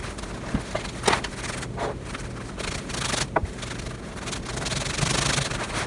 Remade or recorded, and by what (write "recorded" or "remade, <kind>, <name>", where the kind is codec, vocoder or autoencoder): recorded